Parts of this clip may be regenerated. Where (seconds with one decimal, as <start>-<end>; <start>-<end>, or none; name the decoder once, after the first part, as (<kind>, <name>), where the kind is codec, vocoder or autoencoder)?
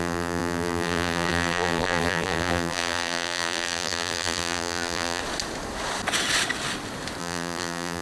0.0-5.2 (vocoder, BigVGAN v2); 7.2-8.0